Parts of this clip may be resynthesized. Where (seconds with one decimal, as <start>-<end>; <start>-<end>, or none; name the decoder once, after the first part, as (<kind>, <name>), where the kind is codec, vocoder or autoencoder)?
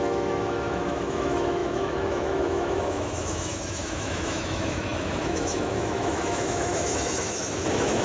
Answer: 0.0-8.0 (autoencoder, DAC-VAE)